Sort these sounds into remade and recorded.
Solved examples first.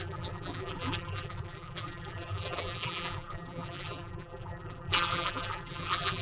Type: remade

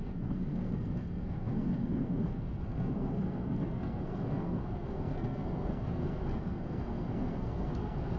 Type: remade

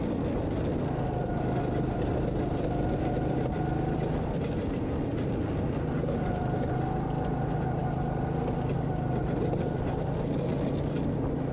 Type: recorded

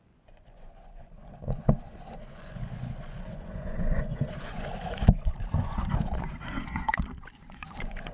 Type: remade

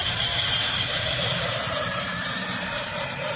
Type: remade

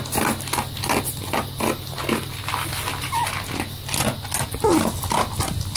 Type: recorded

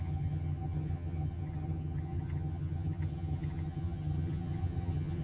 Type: remade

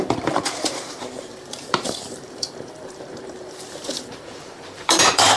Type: remade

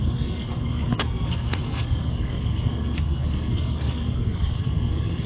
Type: remade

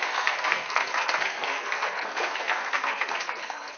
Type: remade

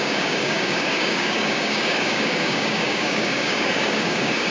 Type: remade